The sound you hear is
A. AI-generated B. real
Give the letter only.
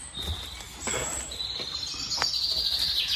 B